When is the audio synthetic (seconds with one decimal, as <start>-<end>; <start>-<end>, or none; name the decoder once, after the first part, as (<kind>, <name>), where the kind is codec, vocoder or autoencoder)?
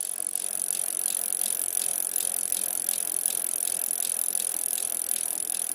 none